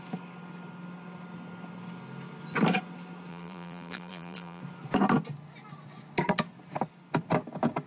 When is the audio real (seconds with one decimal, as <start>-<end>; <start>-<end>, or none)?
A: 0.0-3.3; 4.6-7.9